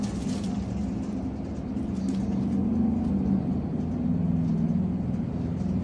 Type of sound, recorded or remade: recorded